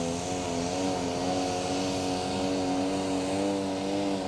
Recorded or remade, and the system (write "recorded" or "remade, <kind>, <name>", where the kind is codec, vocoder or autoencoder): recorded